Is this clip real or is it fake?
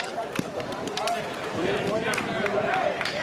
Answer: fake